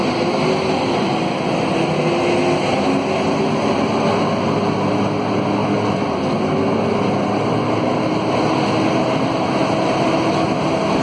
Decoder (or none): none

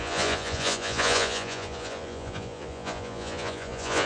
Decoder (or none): vocoder, Vocos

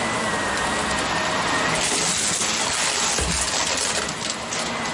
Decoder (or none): none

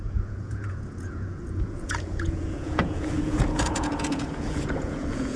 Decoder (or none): vocoder, Vocos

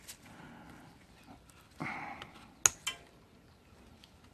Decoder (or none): none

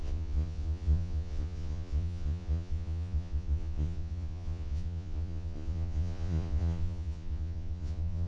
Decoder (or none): vocoder, Vocos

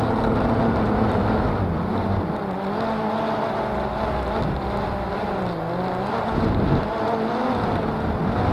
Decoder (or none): none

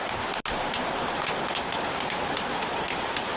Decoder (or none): none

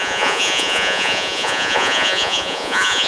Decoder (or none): vocoder, Vocos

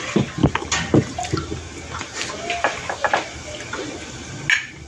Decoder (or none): none